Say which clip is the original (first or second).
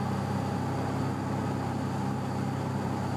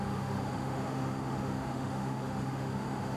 first